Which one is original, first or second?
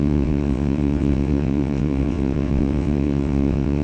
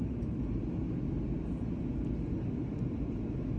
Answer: second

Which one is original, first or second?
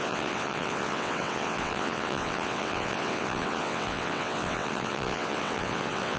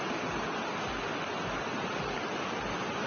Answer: second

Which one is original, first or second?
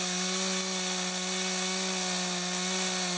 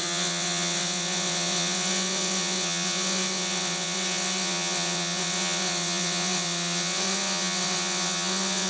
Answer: first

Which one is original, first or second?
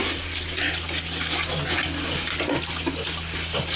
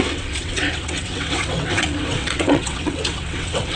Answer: first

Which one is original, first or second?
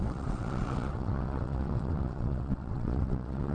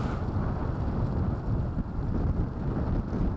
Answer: second